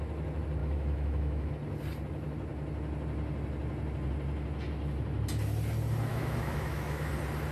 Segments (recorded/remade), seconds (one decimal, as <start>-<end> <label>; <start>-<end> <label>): 0.0-0.6 recorded; 0.6-1.5 remade; 1.5-6.1 recorded; 6.1-7.1 remade; 7.1-7.5 recorded